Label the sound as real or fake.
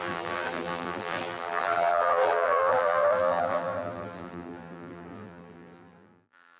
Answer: fake